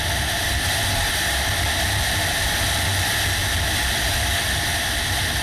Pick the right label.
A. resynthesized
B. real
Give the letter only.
B